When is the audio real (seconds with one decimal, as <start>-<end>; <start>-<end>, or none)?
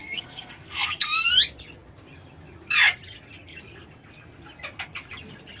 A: 1.3-5.6